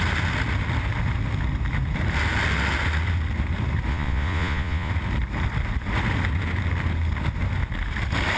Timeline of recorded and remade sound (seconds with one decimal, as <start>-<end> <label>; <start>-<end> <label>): 0.0-3.9 recorded; 3.9-4.9 remade; 4.9-8.4 recorded

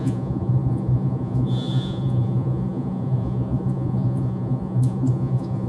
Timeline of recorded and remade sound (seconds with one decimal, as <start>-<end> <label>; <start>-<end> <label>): 0.0-5.7 remade

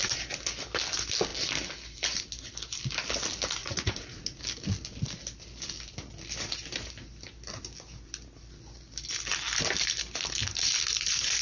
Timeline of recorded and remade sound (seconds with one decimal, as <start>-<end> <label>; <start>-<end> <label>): 0.0-3.6 recorded; 3.6-4.4 remade; 4.4-11.4 recorded

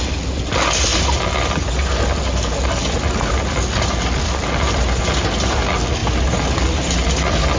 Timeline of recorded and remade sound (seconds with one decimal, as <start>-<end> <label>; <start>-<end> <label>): 0.0-7.6 recorded